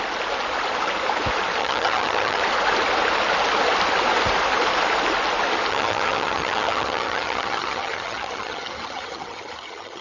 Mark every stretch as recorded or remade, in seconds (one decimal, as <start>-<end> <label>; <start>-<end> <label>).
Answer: 0.0-1.6 recorded; 1.6-2.4 remade; 2.4-5.7 recorded; 5.7-10.0 remade